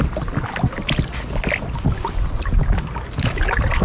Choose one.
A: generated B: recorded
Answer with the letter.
B